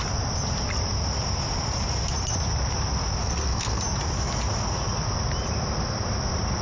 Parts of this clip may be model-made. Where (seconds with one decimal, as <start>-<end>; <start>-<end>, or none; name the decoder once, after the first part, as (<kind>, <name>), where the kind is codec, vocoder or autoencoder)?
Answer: 3.2-3.8 (codec, SNAC)